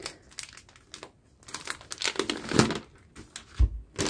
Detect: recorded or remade recorded